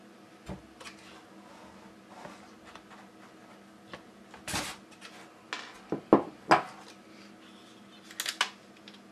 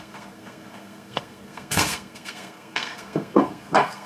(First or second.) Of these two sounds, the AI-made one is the second